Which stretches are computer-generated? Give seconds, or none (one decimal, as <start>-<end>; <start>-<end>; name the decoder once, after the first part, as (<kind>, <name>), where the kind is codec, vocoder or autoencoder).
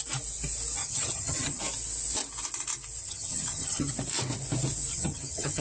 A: 0.8-1.6 (vocoder, HiFi-GAN); 3.0-3.9; 4.9-5.6